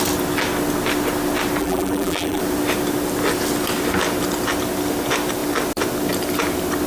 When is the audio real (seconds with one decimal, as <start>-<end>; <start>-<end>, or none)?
0.0-1.6; 2.4-6.9